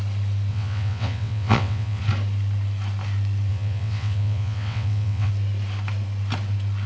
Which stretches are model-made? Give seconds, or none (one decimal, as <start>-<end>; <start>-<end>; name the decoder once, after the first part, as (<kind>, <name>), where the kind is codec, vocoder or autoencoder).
0.5-2.0 (vocoder, WaveNeXt); 3.5-5.3